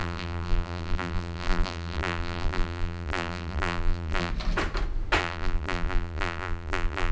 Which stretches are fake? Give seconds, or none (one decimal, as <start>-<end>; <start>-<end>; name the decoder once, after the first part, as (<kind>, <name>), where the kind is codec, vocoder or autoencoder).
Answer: 0.0-4.3 (vocoder, BigVGAN v2); 5.2-7.1